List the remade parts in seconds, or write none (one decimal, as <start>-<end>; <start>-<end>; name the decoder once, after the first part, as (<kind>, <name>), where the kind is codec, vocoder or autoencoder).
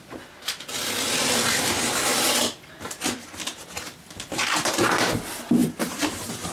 5.6-6.5 (vocoder, BigVGAN v2)